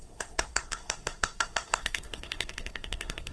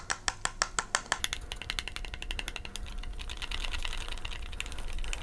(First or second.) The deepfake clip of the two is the first